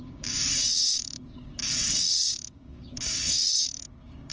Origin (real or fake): fake